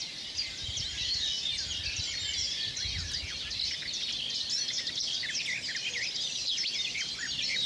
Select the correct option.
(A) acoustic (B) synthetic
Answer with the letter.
A